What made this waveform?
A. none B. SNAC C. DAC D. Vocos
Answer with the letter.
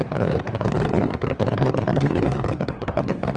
B